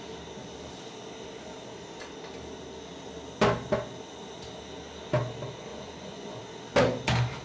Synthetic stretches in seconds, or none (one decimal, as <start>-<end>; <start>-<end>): 5.7-6.4